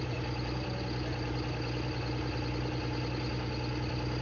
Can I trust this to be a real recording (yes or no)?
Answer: yes